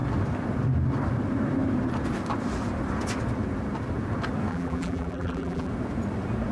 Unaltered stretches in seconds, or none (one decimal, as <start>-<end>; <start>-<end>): 0.0-4.5; 5.7-6.5